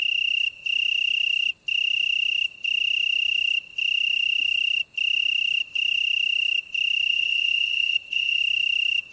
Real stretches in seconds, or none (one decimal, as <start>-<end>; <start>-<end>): 0.0-7.1; 8.4-9.1